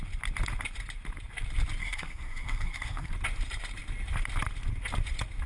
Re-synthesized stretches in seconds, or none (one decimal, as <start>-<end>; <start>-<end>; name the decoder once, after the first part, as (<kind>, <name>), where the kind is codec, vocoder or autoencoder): 1.8-3.1 (codec, SNAC)